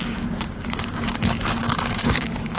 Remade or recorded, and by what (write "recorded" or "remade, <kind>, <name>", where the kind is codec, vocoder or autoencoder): remade, codec, DAC